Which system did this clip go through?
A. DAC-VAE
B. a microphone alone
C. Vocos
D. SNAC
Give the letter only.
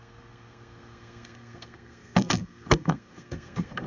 D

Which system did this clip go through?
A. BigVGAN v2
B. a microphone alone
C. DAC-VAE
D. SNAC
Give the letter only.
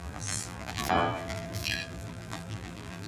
A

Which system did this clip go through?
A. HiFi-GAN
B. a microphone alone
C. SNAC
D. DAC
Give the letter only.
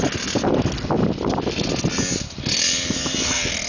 B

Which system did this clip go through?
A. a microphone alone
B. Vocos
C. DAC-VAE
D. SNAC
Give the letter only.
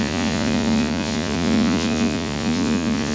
B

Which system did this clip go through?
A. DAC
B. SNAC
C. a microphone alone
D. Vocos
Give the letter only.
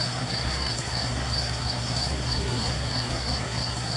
B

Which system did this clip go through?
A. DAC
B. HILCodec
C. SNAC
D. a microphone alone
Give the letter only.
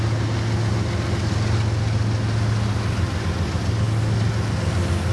D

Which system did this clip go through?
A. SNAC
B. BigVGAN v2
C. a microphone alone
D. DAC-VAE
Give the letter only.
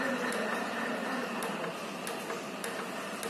C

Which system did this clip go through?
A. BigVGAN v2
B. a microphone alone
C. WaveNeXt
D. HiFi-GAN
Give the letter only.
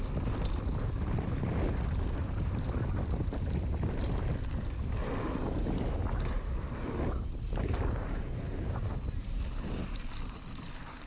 B